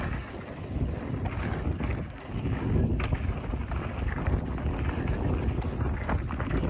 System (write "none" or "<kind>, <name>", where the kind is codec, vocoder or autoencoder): none